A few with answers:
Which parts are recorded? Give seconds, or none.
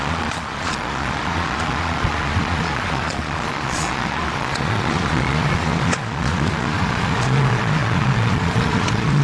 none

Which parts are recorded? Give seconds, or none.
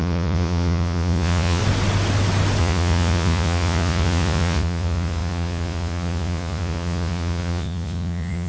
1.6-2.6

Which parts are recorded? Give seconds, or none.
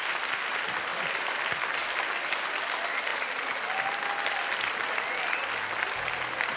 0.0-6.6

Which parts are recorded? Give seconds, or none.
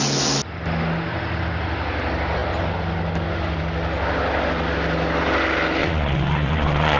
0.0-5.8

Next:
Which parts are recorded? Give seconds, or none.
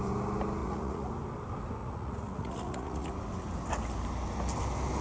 0.0-0.6; 1.1-1.8; 3.1-5.0